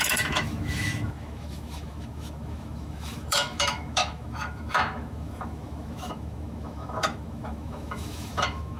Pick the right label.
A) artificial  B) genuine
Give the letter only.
A